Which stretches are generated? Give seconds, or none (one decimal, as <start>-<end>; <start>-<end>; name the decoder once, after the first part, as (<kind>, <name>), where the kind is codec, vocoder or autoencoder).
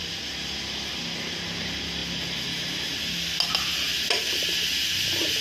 none